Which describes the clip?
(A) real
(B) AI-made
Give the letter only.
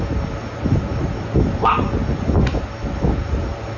A